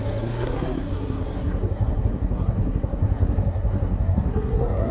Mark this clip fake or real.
fake